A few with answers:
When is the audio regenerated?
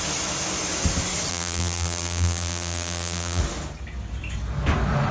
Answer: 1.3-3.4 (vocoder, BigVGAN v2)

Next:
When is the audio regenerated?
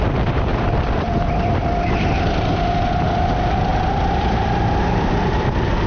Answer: 0.5-1.5 (vocoder, BigVGAN v2); 3.7-4.7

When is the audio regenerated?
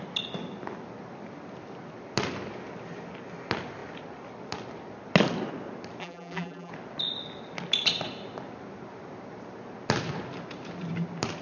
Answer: 6.0-6.7 (vocoder, BigVGAN v2)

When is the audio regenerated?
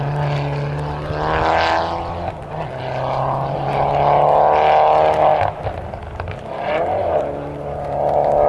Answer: none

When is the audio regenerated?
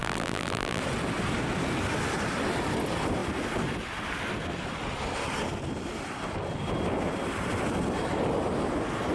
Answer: 0.0-0.8 (vocoder, BigVGAN v2)